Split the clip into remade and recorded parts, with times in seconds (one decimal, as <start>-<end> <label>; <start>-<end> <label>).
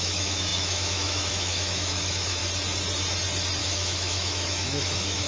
0.0-2.4 remade; 2.4-3.6 recorded; 3.6-5.3 remade